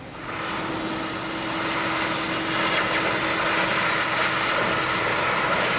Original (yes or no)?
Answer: yes